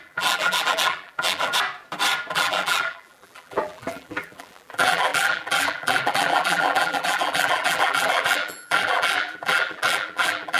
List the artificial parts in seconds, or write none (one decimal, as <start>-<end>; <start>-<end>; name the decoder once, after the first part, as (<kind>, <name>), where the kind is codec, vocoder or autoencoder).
0.0-1.5 (vocoder, BigVGAN v2); 2.3-10.6